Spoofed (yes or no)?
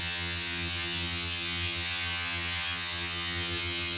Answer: yes